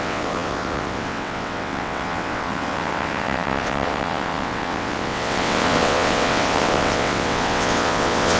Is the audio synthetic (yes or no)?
yes